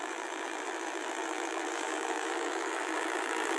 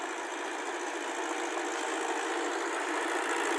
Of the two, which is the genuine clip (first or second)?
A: second